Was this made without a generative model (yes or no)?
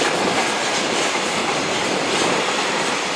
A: yes